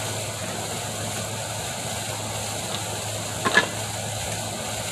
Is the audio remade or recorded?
recorded